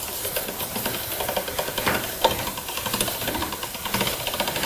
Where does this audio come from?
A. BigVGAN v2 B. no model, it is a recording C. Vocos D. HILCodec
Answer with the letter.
B